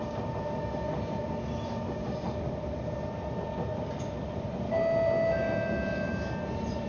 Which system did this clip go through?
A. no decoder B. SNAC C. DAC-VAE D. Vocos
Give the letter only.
A